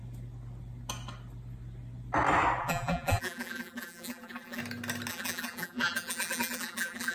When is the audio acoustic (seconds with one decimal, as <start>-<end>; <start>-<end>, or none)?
0.0-2.6; 4.6-5.1